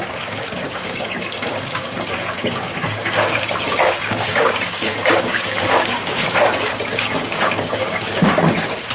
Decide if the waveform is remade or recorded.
remade